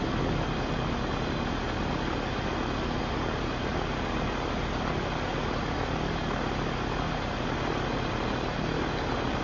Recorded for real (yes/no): yes